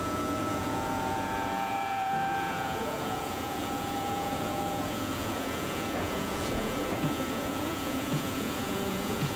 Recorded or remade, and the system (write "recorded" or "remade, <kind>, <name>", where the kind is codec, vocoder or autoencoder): remade, vocoder, Vocos